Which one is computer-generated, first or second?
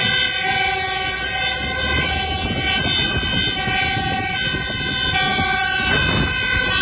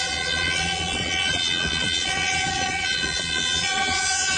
second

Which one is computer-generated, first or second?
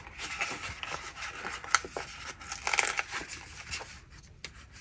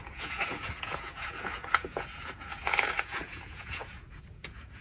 second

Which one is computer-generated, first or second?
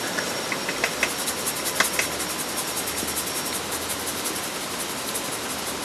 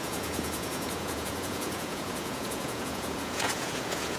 second